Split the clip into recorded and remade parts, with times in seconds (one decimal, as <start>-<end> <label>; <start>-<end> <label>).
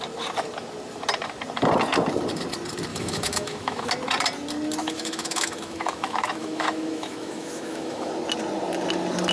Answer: 0.0-2.9 recorded; 2.9-3.9 remade; 3.9-4.8 recorded; 4.8-8.1 remade; 8.1-9.3 recorded